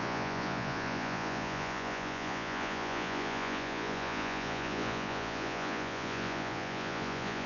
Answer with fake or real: fake